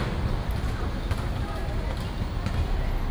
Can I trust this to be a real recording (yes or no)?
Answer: yes